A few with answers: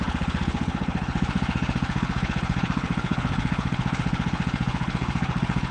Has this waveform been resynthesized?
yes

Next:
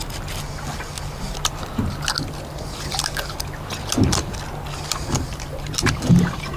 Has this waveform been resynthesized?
no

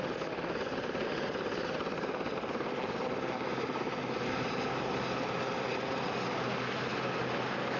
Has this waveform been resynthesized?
no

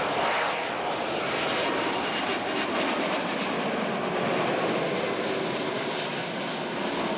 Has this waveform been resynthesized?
no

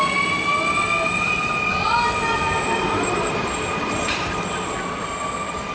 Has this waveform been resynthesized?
no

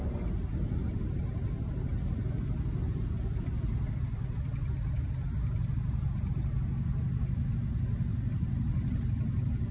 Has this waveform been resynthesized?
no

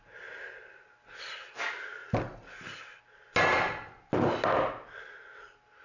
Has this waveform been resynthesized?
no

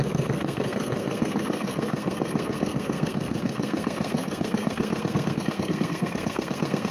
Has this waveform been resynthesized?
yes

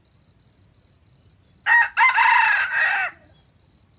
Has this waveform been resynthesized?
no